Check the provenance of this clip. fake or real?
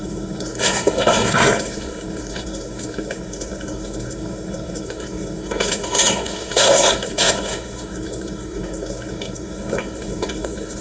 fake